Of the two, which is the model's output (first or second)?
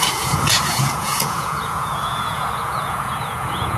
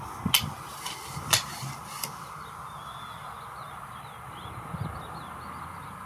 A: first